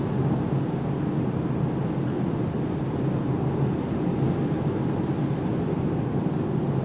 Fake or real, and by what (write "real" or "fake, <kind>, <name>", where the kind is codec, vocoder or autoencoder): real